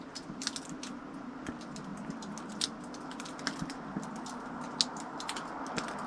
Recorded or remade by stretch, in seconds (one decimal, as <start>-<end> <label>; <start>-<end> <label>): 0.0-6.1 recorded